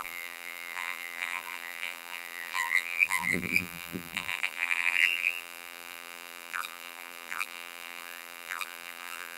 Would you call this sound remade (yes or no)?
yes